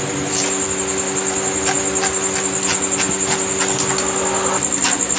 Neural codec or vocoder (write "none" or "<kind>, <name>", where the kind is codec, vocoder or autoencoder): none